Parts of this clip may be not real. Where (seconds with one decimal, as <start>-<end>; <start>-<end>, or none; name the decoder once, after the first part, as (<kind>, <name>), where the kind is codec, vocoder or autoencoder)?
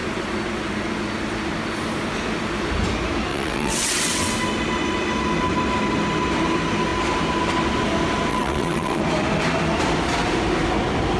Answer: 3.3-4.3 (vocoder, WaveNeXt); 8.3-9.0